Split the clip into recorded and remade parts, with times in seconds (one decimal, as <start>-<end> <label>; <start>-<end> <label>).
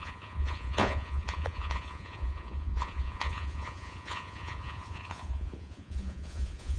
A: 0.0-6.8 remade